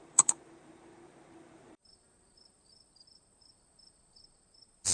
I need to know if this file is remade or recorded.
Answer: remade